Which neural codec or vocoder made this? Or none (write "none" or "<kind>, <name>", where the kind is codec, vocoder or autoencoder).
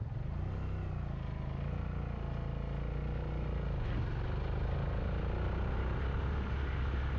none